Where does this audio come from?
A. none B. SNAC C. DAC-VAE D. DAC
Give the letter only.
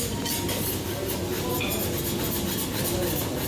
A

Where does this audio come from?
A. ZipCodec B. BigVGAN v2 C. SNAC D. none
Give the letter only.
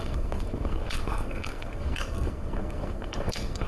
C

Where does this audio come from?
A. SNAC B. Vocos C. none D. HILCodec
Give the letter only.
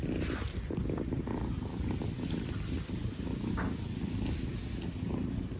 C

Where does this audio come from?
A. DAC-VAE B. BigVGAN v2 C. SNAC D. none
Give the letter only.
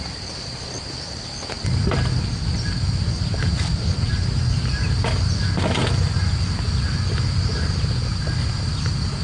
D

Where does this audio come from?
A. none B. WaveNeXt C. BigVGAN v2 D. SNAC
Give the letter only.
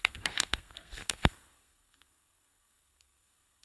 D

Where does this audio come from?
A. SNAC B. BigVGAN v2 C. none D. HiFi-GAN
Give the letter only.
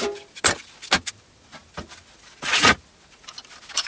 C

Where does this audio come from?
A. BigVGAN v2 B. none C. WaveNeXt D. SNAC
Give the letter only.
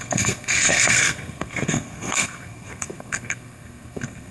D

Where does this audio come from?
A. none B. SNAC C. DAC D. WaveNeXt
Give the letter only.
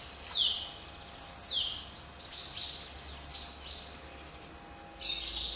A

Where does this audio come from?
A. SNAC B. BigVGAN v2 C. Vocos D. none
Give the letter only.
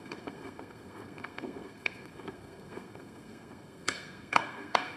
A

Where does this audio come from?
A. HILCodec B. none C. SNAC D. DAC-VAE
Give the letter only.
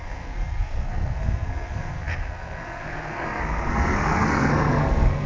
C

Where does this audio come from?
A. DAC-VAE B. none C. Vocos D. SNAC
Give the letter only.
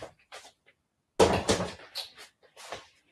B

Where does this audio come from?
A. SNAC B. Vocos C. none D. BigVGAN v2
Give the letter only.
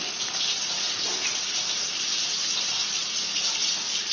C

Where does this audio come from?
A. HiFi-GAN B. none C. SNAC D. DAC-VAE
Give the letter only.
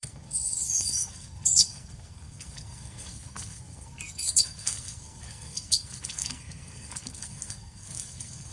C